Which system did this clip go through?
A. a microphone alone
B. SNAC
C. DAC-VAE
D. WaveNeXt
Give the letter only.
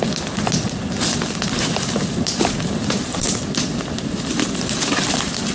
A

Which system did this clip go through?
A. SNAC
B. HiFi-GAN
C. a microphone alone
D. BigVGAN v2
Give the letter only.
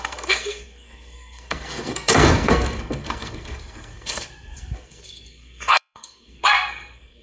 A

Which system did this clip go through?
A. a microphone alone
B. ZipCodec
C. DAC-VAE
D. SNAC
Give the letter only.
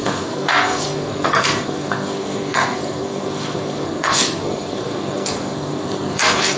D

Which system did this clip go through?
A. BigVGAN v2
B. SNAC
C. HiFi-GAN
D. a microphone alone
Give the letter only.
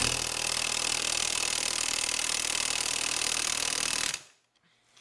D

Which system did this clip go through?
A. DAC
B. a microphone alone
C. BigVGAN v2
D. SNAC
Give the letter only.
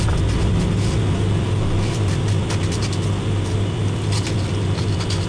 B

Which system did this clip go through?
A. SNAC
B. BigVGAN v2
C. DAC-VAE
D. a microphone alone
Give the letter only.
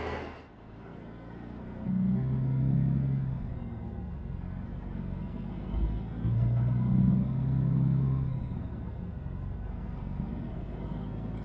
A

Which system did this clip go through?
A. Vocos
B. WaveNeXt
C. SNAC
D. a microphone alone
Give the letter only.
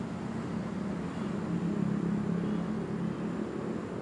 D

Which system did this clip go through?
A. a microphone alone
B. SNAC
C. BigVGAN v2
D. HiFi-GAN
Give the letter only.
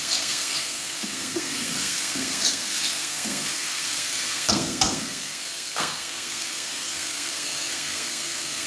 B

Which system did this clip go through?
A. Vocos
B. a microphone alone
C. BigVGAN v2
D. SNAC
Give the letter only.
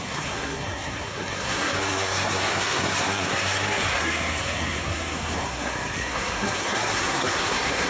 D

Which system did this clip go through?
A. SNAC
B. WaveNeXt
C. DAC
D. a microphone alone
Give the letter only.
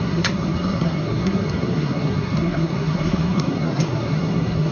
A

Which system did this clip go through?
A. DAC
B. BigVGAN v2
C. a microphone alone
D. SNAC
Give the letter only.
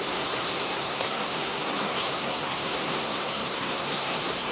D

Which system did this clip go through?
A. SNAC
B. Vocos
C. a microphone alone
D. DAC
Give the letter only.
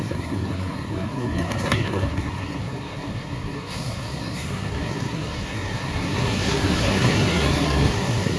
A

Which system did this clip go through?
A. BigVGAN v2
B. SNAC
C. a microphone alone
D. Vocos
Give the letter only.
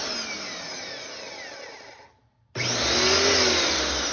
C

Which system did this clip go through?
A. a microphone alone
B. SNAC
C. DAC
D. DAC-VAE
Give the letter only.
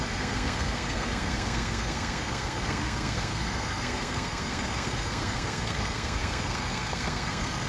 B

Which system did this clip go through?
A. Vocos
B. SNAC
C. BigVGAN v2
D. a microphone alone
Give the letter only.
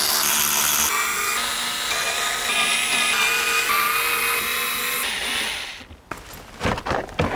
D